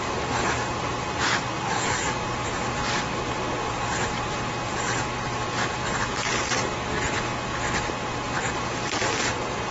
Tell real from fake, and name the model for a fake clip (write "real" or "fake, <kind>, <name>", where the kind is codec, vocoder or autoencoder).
real